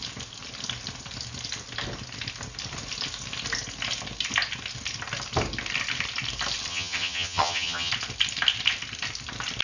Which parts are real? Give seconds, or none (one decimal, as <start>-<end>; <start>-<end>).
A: 0.0-6.7; 7.9-9.6